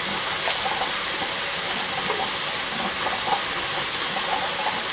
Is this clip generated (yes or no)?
no